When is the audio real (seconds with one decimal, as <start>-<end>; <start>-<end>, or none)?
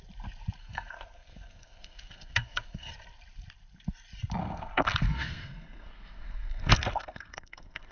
0.0-0.6; 2.9-4.4